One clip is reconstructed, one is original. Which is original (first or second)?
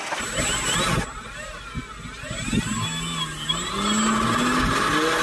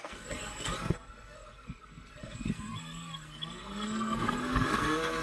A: first